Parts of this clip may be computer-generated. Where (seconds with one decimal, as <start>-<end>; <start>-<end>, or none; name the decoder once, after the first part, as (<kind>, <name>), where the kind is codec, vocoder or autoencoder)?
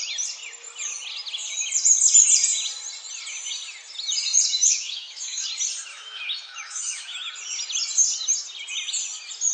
4.6-5.5 (autoencoder, DAC-VAE); 5.9-7.3